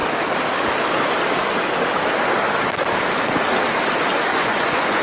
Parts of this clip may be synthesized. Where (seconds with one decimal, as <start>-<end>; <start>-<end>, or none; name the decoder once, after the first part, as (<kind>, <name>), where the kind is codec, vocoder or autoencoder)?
4.3-5.0 (vocoder, Vocos)